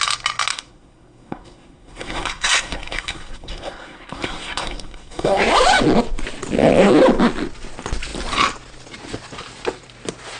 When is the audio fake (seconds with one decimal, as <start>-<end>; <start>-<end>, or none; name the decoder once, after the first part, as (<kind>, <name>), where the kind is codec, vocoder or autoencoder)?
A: 0.5-5.4 (codec, SNAC)